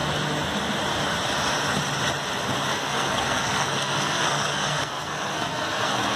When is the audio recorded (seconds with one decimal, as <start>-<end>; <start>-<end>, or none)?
0.0-2.7

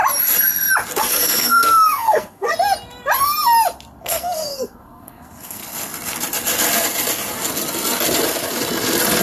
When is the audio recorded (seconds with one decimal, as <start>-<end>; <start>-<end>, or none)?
0.0-1.0; 2.5-4.0; 5.6-9.2